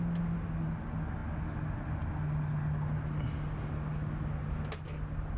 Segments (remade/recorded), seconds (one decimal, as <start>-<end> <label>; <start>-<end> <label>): 0.0-5.4 recorded